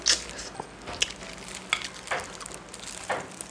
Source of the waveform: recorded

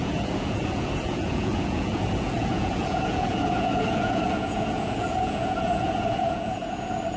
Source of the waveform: remade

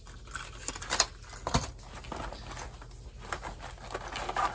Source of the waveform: recorded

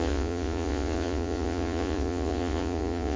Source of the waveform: remade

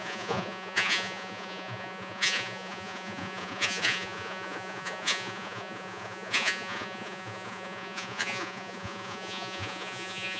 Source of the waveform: remade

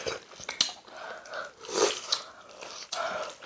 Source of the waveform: recorded